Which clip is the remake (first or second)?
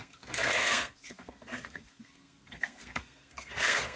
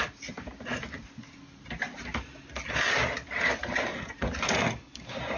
first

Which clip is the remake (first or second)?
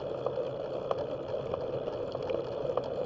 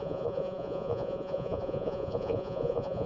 second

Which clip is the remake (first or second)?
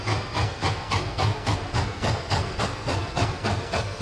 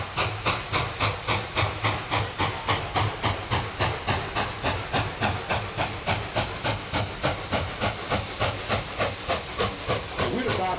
first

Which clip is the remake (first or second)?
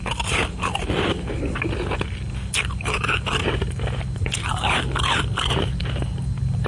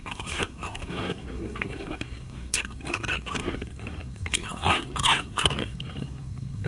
second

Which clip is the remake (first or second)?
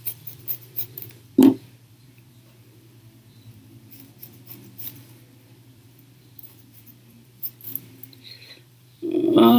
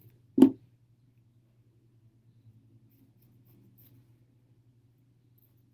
first